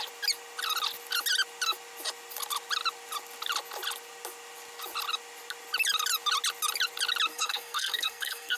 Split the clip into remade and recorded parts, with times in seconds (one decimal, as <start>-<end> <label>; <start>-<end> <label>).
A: 0.0-7.3 recorded; 7.3-8.6 remade